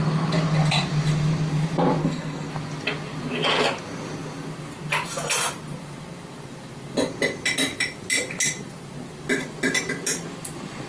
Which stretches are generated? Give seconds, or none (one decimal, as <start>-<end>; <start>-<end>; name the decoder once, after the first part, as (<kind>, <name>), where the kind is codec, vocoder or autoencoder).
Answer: 2.0-2.5 (codec, SNAC)